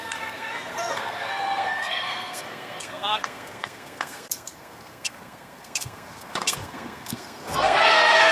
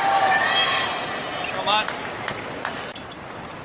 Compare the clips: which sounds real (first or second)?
second